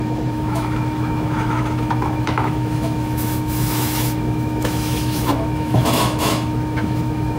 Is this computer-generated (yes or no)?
yes